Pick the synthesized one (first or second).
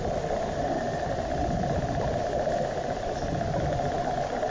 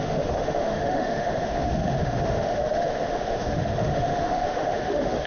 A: second